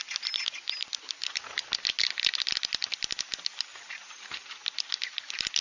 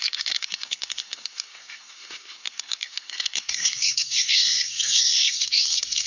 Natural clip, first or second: first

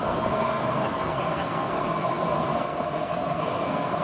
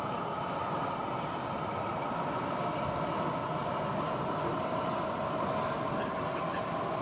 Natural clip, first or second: second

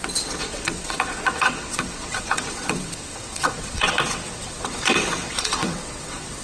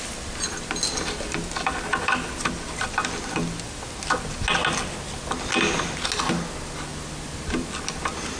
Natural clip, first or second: second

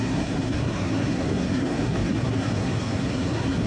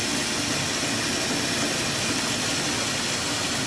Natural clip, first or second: second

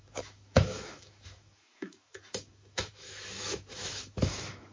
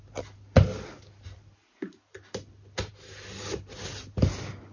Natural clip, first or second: second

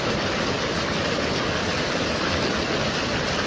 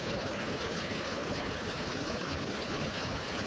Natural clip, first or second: first